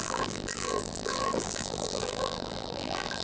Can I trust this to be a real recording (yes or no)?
no